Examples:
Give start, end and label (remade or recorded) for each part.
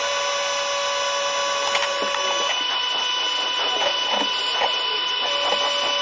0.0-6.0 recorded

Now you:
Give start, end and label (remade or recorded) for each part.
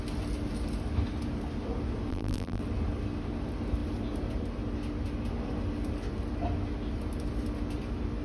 0.0-2.1 recorded; 2.1-2.6 remade; 2.6-8.2 recorded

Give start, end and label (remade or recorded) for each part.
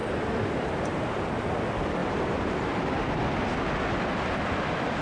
0.0-1.1 remade; 1.1-2.0 recorded; 2.0-3.1 remade; 3.1-5.0 recorded